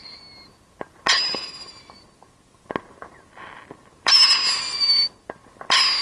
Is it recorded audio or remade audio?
recorded